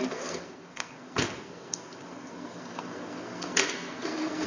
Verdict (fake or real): fake